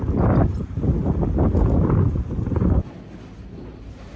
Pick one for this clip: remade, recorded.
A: recorded